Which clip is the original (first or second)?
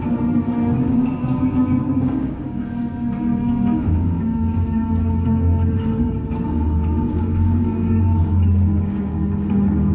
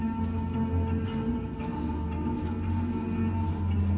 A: second